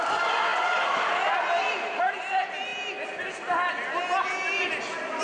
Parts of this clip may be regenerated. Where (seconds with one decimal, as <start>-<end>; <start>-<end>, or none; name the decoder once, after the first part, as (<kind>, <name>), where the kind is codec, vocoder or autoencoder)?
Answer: none